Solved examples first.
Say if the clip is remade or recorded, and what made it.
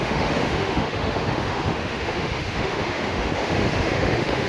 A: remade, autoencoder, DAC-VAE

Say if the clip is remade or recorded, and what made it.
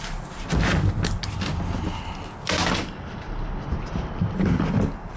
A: recorded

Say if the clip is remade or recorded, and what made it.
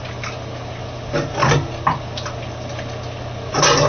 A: recorded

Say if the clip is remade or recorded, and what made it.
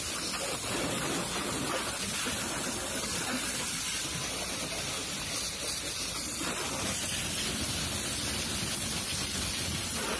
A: recorded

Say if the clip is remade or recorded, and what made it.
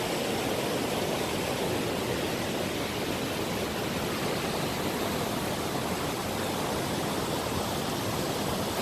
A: recorded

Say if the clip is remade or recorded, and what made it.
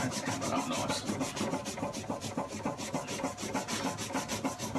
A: recorded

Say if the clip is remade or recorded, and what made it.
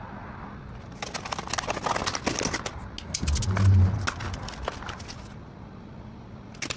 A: recorded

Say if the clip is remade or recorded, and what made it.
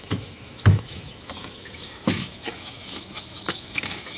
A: remade, autoencoder, DAC-VAE